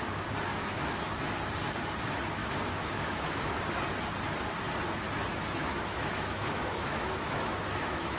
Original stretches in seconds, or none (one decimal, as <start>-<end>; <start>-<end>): 0.0-0.5; 1.3-2.4; 3.6-5.3